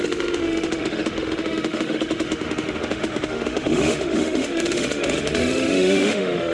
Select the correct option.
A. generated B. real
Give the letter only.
A